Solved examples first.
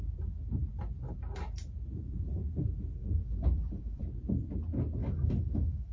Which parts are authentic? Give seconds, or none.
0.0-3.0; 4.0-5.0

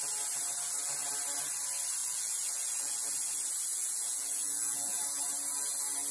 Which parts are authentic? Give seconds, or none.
0.0-2.0; 3.1-3.7; 5.0-6.1

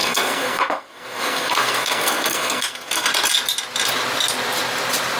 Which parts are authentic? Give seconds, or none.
3.1-5.2

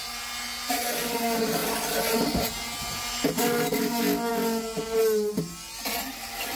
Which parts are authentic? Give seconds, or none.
0.0-6.6

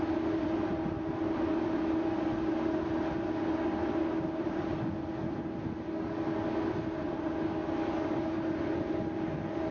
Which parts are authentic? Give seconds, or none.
0.0-9.7

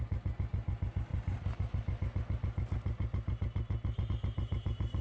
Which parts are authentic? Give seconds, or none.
0.0-5.0